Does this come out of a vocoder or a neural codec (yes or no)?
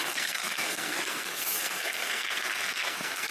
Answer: yes